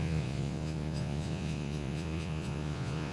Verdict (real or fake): fake